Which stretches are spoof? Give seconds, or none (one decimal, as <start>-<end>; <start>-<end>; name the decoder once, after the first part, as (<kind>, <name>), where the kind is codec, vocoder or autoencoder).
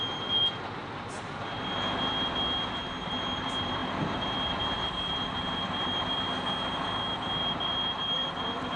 0.0-0.8 (vocoder, BigVGAN v2); 3.2-8.8